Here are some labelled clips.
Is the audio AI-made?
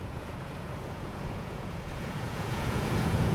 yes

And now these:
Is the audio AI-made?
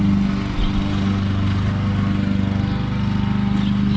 no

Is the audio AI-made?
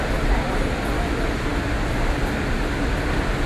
no